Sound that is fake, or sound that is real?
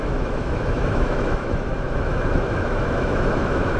fake